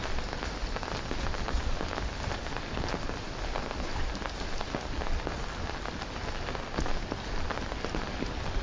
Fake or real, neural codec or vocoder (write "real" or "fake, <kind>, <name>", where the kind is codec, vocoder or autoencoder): real